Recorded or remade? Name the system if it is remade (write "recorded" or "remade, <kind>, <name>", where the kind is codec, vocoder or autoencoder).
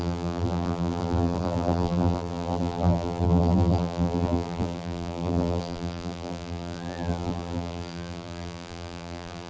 remade, vocoder, BigVGAN v2